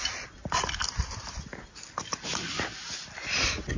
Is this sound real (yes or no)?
yes